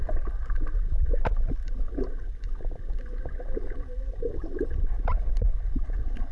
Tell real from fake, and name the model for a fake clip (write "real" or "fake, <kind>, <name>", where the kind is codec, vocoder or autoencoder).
real